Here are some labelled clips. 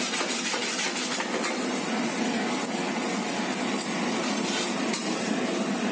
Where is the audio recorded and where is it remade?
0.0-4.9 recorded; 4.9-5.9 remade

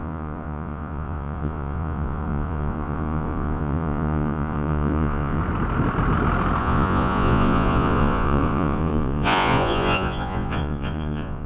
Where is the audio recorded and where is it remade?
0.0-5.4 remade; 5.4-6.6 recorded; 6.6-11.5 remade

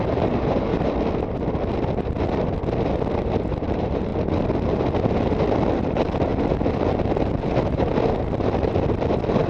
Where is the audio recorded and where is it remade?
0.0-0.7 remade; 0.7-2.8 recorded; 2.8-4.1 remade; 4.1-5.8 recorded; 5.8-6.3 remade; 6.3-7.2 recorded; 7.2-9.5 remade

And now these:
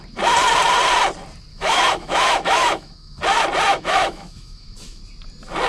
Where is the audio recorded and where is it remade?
0.0-1.5 recorded; 1.5-3.2 remade; 3.2-3.7 recorded; 3.7-5.0 remade; 5.0-5.7 recorded

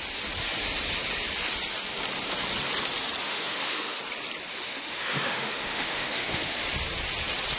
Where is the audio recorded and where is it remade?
0.0-3.2 recorded; 3.2-4.0 remade; 4.0-4.5 recorded; 4.5-6.6 remade; 6.6-7.6 recorded

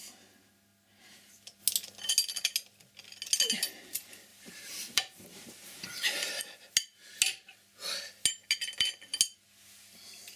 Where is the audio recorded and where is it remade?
0.0-4.3 recorded; 4.3-6.4 remade; 6.4-10.4 recorded